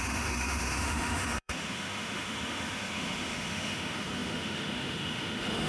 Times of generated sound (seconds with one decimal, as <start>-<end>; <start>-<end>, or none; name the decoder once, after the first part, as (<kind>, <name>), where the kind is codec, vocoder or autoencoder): 0.0-5.7 (autoencoder, DAC-VAE)